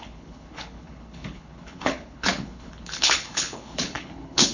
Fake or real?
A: fake